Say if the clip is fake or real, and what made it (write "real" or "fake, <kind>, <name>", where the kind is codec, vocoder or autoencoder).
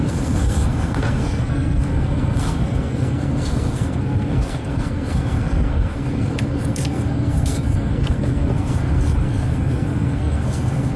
fake, codec, SNAC